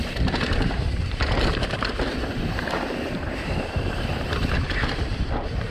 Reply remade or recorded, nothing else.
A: remade